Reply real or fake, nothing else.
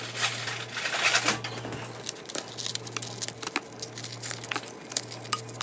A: real